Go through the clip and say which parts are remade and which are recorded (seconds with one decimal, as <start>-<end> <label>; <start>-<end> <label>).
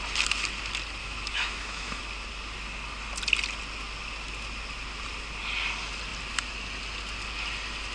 0.0-1.0 recorded; 1.0-2.0 remade; 2.0-7.9 recorded